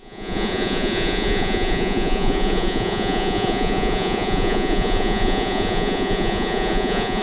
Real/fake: fake